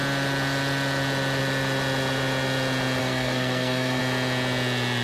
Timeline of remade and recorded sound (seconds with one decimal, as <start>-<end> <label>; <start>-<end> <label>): 0.0-3.0 recorded; 3.0-4.0 remade; 4.0-5.0 recorded